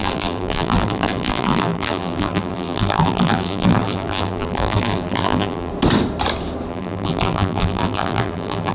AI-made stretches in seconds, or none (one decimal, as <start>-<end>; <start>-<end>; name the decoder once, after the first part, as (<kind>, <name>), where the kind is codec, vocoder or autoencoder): 0.0-5.7 (vocoder, BigVGAN v2); 6.7-8.7